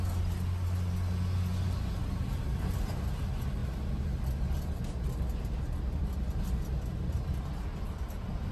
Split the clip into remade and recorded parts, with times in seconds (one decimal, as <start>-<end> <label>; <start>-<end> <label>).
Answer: 0.0-8.5 recorded